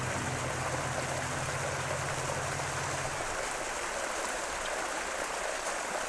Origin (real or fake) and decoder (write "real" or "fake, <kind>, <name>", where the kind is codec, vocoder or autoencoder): real